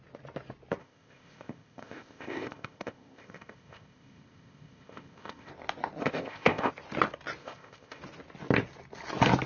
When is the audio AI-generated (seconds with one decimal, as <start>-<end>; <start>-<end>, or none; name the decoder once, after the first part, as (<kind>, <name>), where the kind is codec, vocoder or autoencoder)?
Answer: 0.8-5.5 (codec, ZipCodec); 6.0-6.7; 7.4-8.0